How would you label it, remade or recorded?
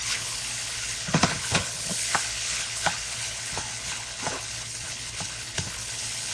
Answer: remade